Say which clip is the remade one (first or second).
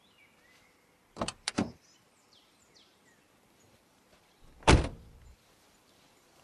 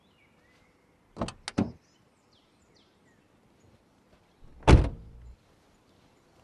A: first